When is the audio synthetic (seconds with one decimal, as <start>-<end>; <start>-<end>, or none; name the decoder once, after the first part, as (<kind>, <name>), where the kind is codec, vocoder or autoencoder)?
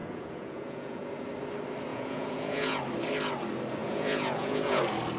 0.0-1.1 (vocoder, Vocos); 1.9-2.8; 3.8-4.8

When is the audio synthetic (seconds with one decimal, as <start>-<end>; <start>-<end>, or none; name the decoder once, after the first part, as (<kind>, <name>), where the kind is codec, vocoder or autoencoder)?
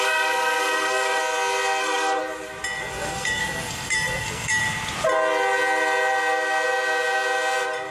0.0-1.2 (codec, SNAC); 1.8-2.2; 2.9-4.6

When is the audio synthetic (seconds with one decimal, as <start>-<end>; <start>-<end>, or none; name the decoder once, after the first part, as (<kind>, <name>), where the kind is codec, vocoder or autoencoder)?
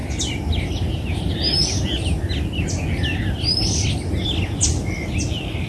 none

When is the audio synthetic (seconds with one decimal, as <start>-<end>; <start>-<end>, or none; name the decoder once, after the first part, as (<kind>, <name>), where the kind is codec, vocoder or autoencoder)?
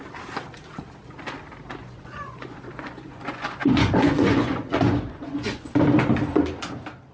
1.8-5.7 (vocoder, Vocos)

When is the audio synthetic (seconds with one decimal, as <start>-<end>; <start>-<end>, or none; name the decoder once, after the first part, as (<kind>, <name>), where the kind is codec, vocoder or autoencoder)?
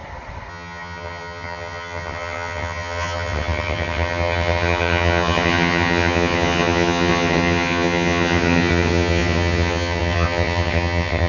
0.5-11.3 (vocoder, HiFi-GAN)